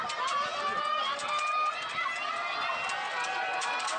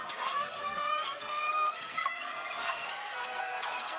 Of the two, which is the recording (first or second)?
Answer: first